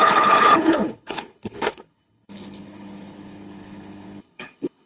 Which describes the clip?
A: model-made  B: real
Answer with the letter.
A